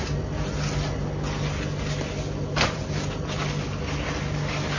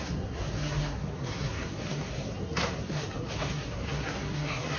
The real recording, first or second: first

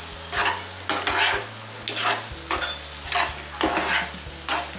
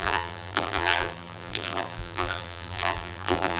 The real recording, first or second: first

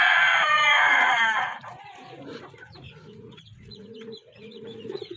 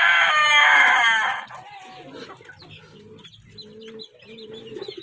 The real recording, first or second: second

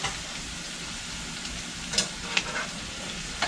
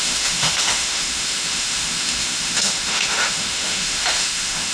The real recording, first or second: first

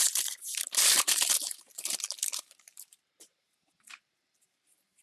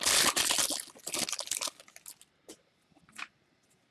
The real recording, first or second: second